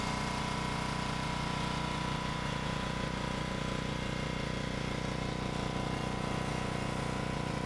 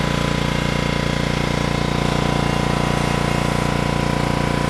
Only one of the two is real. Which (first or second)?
second